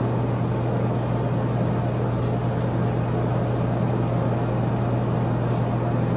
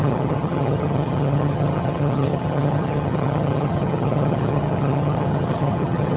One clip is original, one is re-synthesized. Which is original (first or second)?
first